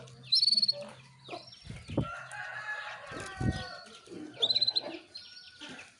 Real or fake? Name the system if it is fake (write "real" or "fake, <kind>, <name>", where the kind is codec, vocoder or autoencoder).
real